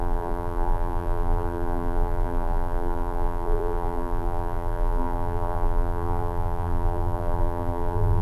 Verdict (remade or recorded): remade